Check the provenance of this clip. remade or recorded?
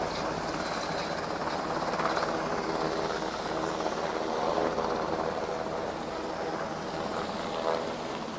recorded